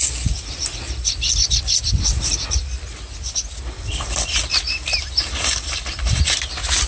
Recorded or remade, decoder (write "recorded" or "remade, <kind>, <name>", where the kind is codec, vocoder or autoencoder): recorded